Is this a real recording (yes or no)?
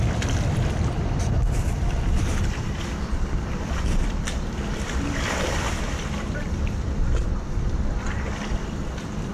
no